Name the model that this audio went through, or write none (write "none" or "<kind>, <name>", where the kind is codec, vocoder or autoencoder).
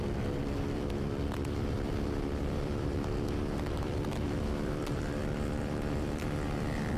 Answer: vocoder, BigVGAN v2